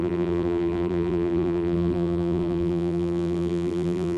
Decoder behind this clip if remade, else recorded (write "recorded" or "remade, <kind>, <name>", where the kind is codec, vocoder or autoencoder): remade, vocoder, BigVGAN v2